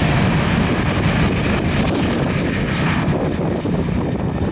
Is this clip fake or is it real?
real